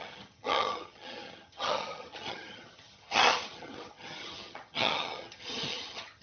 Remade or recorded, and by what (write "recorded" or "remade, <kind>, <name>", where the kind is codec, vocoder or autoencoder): remade, vocoder, HiFi-GAN